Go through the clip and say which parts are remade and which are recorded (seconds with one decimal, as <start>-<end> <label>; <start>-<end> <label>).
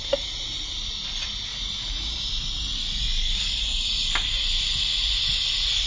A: 0.0-1.5 recorded; 1.5-2.3 remade; 2.3-5.9 recorded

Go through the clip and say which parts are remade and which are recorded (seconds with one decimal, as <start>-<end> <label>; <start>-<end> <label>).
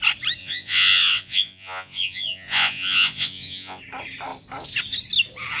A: 0.0-0.4 recorded; 0.4-3.8 remade; 3.8-5.6 recorded